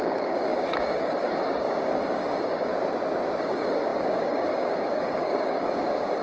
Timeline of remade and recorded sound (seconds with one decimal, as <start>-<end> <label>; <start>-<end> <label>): 0.0-2.7 remade; 2.7-3.4 recorded; 3.4-6.2 remade